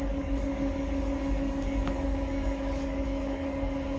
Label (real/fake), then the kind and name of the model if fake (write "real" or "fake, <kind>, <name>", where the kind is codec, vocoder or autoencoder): fake, codec, DAC